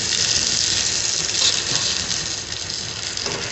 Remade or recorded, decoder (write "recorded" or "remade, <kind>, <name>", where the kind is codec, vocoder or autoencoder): recorded